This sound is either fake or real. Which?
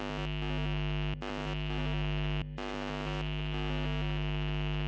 real